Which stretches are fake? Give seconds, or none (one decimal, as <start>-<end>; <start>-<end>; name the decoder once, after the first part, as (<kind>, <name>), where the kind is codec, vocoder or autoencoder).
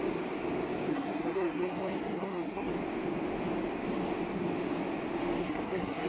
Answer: 0.9-2.7 (codec, SNAC); 5.4-6.1